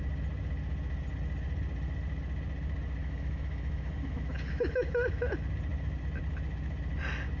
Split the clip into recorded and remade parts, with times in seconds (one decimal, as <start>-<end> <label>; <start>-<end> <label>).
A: 0.0-3.0 recorded; 3.0-5.3 remade; 5.3-7.4 recorded